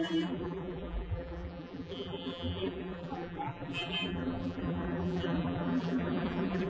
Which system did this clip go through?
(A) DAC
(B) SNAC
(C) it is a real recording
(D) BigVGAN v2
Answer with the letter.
D